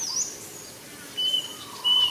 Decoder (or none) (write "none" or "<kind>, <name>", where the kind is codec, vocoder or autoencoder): none